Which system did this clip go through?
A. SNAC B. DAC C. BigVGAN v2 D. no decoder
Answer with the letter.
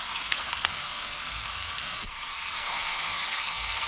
A